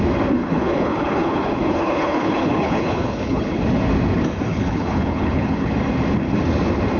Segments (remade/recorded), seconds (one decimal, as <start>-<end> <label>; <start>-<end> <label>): 0.0-0.4 recorded; 0.4-3.6 remade; 3.6-4.5 recorded; 4.5-5.7 remade; 5.7-7.0 recorded